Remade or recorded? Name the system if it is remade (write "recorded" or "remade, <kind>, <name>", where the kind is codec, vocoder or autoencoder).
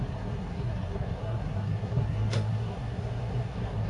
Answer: remade, codec, SNAC